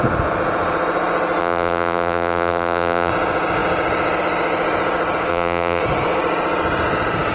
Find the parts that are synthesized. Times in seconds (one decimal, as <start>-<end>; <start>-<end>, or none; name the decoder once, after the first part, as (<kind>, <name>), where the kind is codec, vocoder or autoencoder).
1.4-3.1 (vocoder, BigVGAN v2); 5.3-5.8